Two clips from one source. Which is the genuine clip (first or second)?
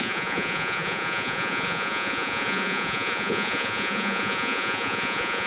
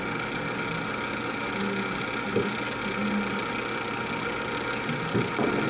second